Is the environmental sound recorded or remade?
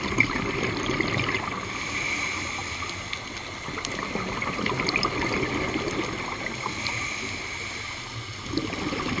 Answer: recorded